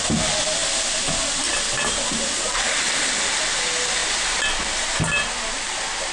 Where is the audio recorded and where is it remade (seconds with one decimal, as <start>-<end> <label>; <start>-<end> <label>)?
0.0-6.1 recorded